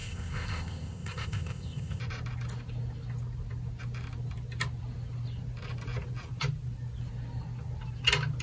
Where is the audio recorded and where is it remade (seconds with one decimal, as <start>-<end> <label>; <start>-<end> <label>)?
0.0-2.0 remade; 2.0-8.4 recorded